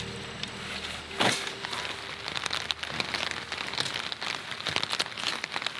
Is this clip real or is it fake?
real